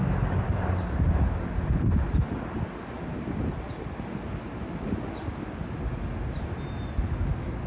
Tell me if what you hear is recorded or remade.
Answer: recorded